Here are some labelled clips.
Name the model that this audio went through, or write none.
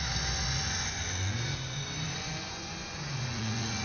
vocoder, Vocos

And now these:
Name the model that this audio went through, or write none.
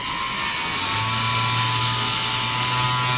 none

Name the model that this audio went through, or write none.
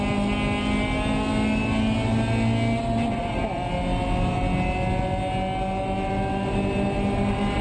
none